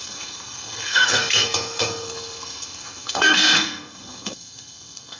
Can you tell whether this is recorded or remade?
remade